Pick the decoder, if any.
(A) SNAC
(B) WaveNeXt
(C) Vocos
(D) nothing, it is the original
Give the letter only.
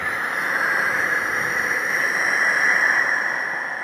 D